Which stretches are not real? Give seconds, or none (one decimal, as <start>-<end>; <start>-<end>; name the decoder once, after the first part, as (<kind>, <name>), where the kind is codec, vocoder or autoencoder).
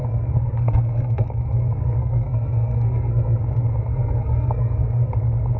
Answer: 0.0-3.4 (codec, SNAC); 3.9-5.1